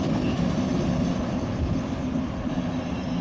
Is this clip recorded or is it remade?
recorded